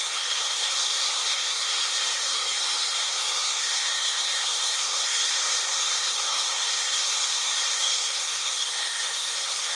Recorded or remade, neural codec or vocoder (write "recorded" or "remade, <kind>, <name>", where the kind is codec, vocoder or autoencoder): remade, codec, SNAC